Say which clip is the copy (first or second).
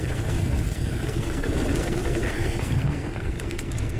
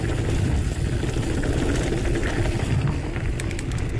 first